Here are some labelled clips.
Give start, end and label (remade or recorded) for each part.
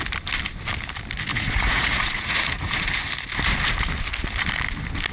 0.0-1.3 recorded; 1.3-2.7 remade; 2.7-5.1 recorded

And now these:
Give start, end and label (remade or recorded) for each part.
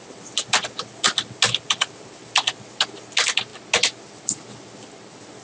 0.0-5.4 recorded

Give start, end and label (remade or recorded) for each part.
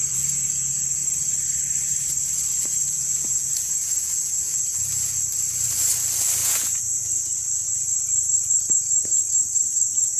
0.0-0.7 remade; 0.7-2.7 recorded; 2.7-5.2 remade; 5.2-6.4 recorded; 6.4-7.3 remade; 7.3-10.2 recorded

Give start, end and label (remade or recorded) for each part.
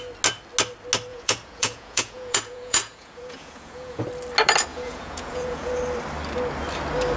0.0-1.1 recorded; 1.1-4.0 remade; 4.0-4.7 recorded; 4.7-5.7 remade; 5.7-7.2 recorded